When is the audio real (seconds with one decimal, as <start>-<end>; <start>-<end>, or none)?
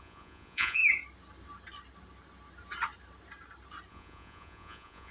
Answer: 0.8-3.9